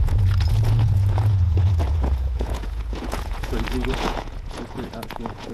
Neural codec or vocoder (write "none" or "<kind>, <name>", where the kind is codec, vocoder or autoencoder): vocoder, Vocos